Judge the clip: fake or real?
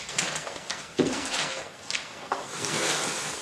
fake